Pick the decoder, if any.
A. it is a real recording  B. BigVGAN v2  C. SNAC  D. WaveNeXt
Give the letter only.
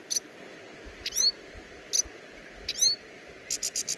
A